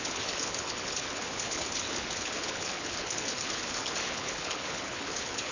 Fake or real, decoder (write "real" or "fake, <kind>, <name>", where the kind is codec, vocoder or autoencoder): fake, codec, HILCodec